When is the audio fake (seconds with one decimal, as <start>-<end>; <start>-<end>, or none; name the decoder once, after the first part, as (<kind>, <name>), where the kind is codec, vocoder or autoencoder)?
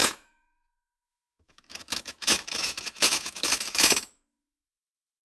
0.0-5.2 (autoencoder, DAC-VAE)